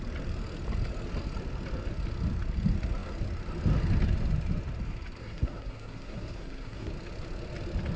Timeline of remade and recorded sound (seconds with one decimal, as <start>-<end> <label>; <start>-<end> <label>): 0.0-5.2 recorded; 5.2-6.9 remade; 6.9-8.0 recorded